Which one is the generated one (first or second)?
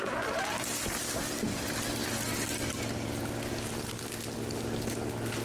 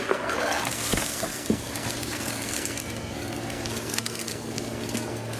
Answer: second